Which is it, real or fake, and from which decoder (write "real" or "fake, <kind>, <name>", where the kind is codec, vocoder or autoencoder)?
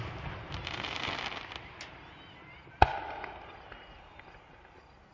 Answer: real